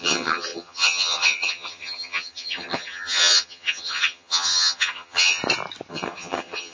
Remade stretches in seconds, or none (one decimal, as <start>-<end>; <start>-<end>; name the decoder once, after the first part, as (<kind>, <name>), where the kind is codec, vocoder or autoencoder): 0.0-5.4 (vocoder, HiFi-GAN); 5.9-6.7